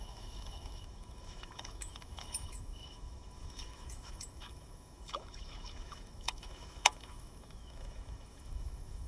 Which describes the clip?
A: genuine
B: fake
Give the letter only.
B